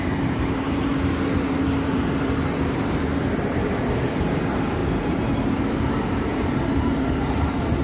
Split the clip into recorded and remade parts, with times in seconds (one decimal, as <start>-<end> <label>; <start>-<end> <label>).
0.0-0.9 remade; 0.9-1.9 recorded; 1.9-4.8 remade; 4.8-5.6 recorded; 5.6-7.8 remade